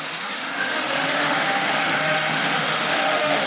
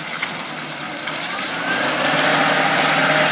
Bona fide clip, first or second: second